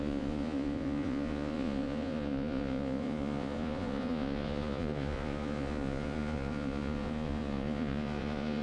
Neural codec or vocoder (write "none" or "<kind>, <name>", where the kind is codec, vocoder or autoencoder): vocoder, Vocos